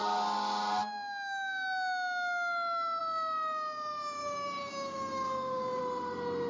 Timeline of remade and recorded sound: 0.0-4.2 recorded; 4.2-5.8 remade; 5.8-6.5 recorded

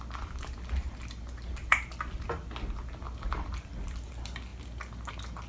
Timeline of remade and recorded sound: 0.0-5.5 recorded

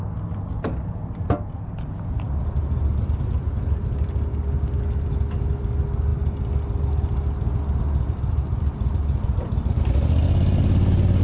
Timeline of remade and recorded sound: 0.0-4.3 recorded; 4.3-4.8 remade; 4.8-11.2 recorded

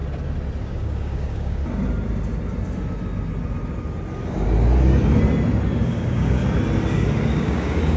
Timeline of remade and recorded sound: 0.0-0.6 recorded; 0.6-1.6 remade; 1.6-5.8 recorded; 5.8-6.4 remade; 6.4-6.9 recorded; 6.9-8.0 remade